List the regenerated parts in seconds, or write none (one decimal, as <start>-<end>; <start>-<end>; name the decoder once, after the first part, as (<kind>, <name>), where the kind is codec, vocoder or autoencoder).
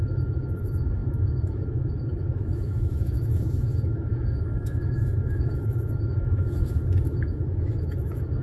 0.0-8.4 (autoencoder, DAC-VAE)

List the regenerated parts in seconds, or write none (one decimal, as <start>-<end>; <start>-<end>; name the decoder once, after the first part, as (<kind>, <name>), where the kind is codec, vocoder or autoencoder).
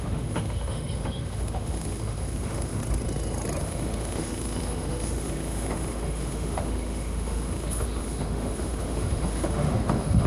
0.0-2.8 (autoencoder, DAC-VAE); 3.6-10.3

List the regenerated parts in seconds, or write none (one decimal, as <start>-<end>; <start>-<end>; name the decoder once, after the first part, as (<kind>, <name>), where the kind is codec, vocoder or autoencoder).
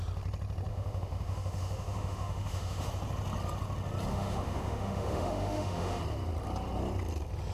0.7-2.9 (autoencoder, DAC-VAE); 4.1-6.0